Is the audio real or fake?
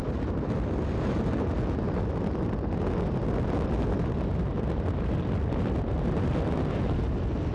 real